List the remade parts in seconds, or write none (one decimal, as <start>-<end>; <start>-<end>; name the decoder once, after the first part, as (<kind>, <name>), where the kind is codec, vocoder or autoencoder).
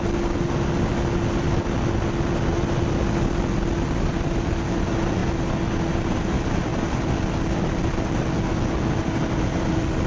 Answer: none